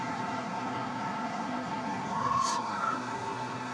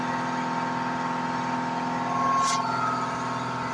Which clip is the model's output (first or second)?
first